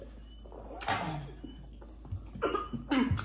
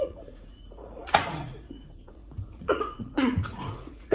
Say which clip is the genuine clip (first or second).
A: first